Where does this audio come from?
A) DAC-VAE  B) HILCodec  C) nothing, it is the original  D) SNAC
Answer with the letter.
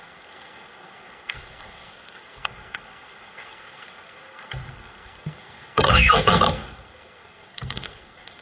D